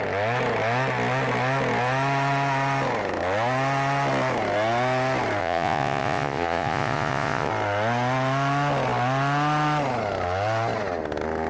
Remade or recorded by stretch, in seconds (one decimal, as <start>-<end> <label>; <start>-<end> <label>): 0.0-5.4 recorded; 5.4-7.5 remade; 7.5-11.5 recorded